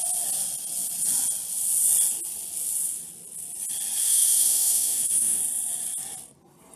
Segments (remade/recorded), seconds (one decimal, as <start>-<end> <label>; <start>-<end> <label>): 0.0-4.0 recorded; 4.0-5.4 remade; 5.4-6.8 recorded